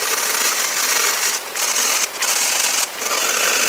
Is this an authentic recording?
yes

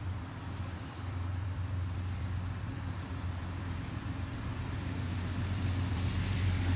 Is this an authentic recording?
no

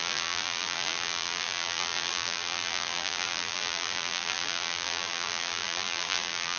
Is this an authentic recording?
no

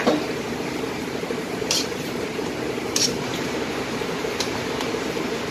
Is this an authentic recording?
no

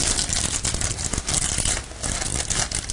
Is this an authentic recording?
yes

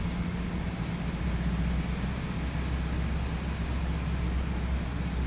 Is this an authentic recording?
yes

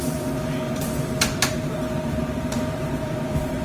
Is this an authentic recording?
no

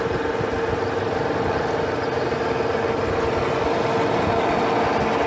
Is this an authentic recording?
yes